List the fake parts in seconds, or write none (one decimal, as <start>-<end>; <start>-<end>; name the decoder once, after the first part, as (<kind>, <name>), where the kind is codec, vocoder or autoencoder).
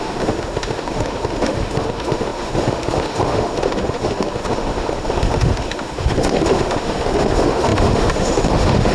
0.0-8.9 (autoencoder, DAC-VAE)